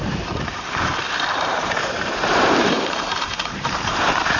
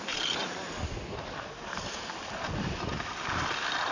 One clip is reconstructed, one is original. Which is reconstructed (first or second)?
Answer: first